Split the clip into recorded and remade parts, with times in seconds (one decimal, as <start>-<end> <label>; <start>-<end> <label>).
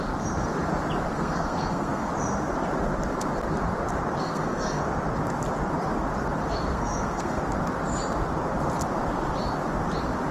0.0-1.1 recorded; 1.1-2.1 remade; 2.1-4.2 recorded; 4.2-4.8 remade; 4.8-6.7 recorded; 6.7-7.4 remade; 7.4-10.3 recorded